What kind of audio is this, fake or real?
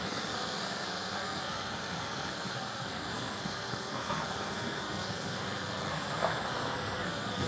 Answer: fake